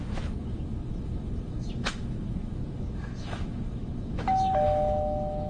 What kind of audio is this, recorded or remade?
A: remade